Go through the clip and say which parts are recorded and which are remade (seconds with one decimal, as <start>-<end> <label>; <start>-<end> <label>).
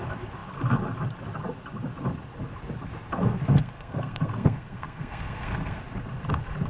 0.0-3.5 recorded; 3.5-5.8 remade; 5.8-6.7 recorded